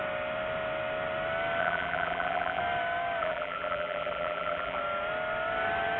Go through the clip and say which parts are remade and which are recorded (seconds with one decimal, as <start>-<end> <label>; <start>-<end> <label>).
0.0-1.6 recorded; 1.6-2.6 remade; 2.6-3.2 recorded; 3.2-4.8 remade; 4.8-6.0 recorded